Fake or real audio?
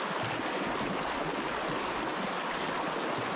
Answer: real